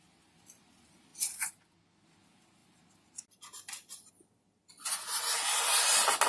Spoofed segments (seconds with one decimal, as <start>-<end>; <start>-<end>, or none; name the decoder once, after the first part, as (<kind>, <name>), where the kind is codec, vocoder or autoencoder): none